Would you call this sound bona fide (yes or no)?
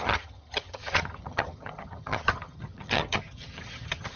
no